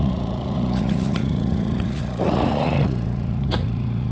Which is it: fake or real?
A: fake